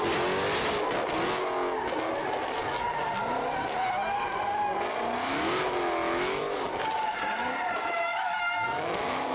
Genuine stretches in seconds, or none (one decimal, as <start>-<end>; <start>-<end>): 0.0-5.3; 6.4-8.1